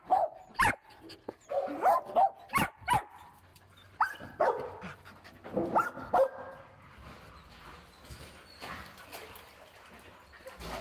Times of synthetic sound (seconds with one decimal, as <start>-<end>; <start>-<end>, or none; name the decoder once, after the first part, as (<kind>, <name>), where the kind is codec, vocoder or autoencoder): none